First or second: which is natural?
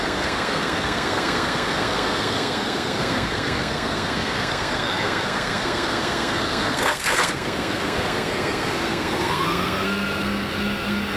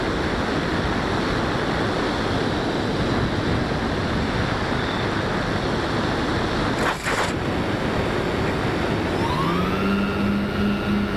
second